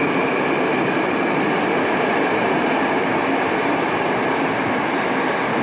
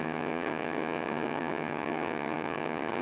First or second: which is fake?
second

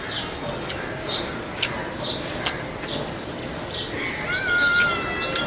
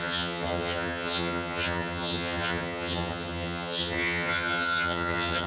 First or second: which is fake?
second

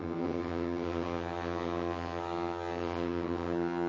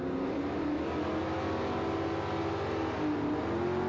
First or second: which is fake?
first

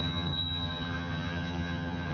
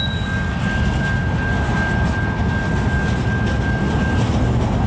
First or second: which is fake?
first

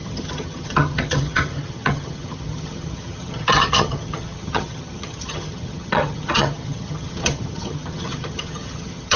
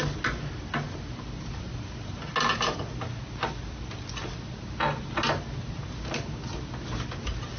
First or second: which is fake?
first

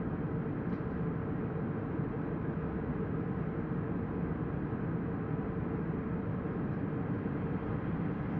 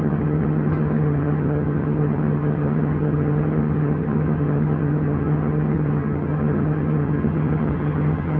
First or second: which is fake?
second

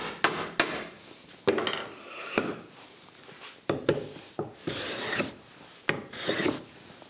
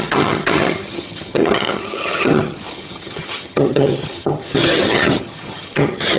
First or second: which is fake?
second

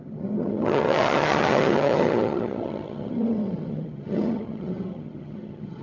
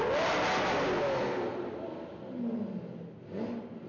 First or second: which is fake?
first